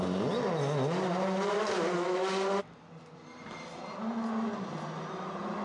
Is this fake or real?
real